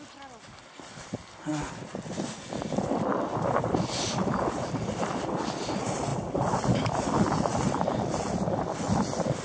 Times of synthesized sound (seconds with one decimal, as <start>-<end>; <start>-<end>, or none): none